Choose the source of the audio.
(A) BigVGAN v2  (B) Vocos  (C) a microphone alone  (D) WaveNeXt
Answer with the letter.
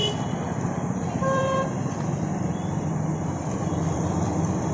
A